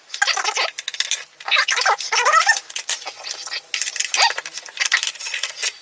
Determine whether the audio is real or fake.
real